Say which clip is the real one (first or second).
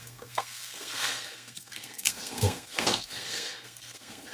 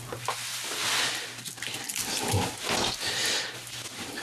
second